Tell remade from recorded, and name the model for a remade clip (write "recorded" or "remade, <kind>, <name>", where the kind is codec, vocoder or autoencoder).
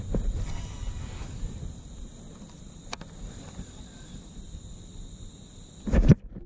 recorded